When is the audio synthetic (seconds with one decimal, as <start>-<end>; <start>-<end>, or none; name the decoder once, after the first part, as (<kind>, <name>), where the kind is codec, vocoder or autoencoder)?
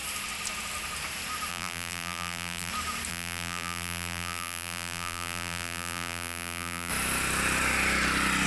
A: 1.5-2.7 (vocoder, BigVGAN v2); 3.1-6.9